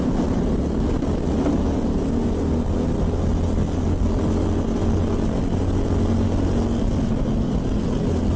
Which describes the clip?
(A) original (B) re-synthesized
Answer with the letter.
A